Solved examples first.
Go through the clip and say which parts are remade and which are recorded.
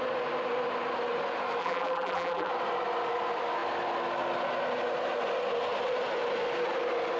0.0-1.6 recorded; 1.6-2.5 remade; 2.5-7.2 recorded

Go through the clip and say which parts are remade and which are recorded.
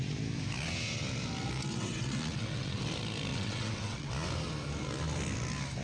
0.0-1.7 recorded; 1.7-2.8 remade; 2.8-3.3 recorded; 3.3-4.1 remade; 4.1-5.8 recorded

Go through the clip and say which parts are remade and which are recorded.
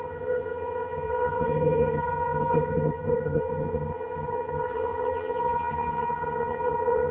0.0-7.1 remade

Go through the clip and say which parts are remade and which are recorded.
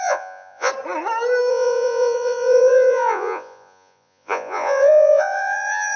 0.0-0.7 remade; 0.7-1.5 recorded; 1.5-6.0 remade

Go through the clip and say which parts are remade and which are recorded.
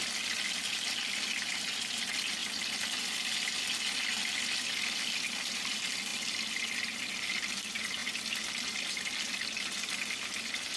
0.0-10.8 recorded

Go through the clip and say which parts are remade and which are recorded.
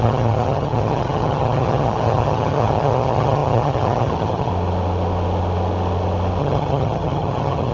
0.0-4.5 remade; 4.5-6.4 recorded; 6.4-7.7 remade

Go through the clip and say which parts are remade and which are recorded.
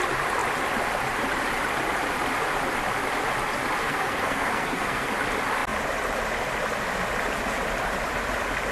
0.0-3.8 recorded; 3.8-5.1 remade; 5.1-8.7 recorded